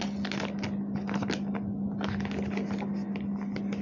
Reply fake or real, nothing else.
real